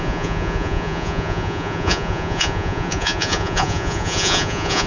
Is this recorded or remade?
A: remade